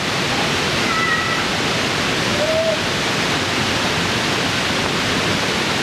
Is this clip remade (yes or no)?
no